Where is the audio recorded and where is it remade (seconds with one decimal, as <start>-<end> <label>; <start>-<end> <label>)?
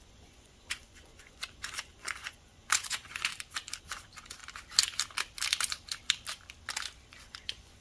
0.0-3.3 remade; 3.3-3.8 recorded; 3.8-4.4 remade; 4.4-7.2 recorded; 7.2-7.8 remade